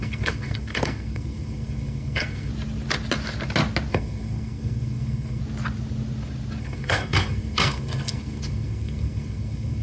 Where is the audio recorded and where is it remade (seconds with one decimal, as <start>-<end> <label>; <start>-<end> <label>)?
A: 0.0-2.5 remade; 2.5-3.9 recorded; 3.9-5.4 remade; 5.4-6.6 recorded; 6.6-9.8 remade